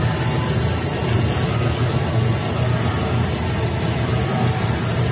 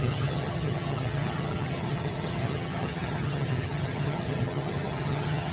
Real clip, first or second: first